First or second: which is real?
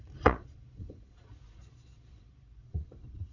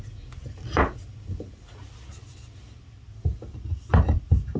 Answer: second